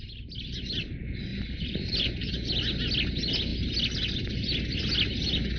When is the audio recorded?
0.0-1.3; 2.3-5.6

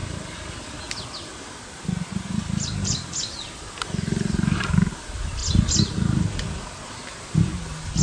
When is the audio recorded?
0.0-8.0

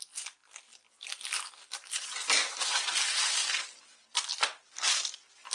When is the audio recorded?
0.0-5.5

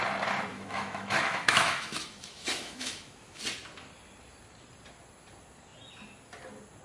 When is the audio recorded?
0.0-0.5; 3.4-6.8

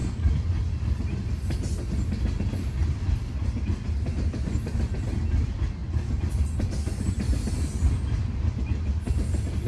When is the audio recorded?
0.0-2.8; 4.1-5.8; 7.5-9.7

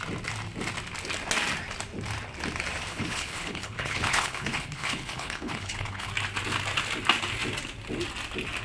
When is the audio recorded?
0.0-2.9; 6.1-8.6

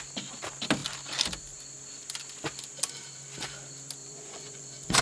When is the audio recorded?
0.0-4.0